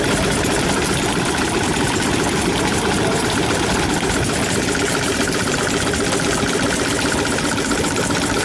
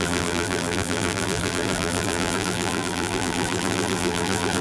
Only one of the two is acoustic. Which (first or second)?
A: first